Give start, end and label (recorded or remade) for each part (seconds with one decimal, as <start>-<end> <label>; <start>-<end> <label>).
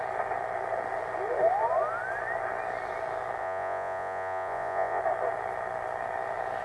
0.0-3.4 recorded; 3.4-5.0 remade; 5.0-6.6 recorded